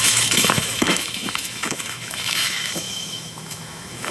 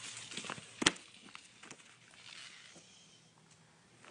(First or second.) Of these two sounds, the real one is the second